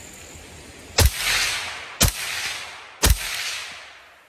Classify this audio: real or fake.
real